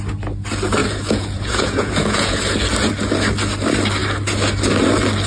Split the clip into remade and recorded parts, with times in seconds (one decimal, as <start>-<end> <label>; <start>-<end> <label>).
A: 0.0-0.8 recorded; 0.8-2.4 remade; 2.4-5.3 recorded